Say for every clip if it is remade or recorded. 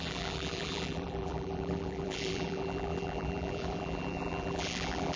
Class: remade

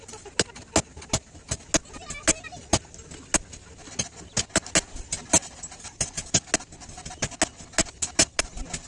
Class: recorded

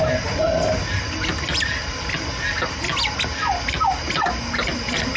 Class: recorded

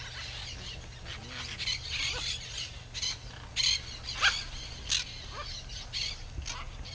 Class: recorded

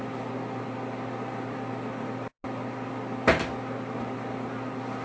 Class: recorded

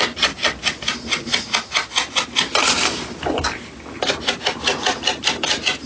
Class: recorded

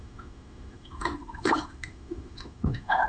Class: remade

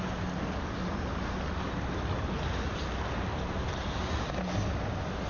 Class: recorded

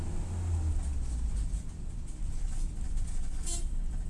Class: recorded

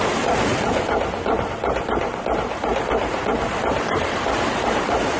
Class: remade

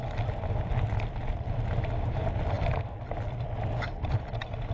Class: recorded